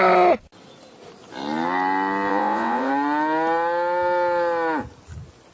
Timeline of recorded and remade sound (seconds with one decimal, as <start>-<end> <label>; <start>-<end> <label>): 0.0-2.3 recorded; 2.3-2.9 remade; 2.9-5.5 recorded